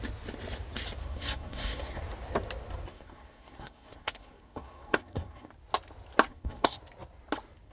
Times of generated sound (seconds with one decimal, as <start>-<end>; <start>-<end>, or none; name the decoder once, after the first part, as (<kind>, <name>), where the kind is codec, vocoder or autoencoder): 1.0-2.0 (codec, SNAC); 2.9-5.5; 6.3-6.8